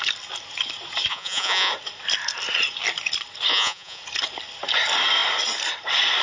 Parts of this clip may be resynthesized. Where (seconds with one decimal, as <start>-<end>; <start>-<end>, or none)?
1.1-1.7; 3.5-4.0